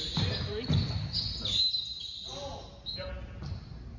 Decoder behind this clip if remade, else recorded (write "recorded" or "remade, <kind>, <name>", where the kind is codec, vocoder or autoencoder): recorded